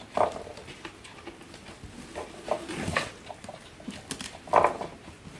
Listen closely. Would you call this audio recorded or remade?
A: recorded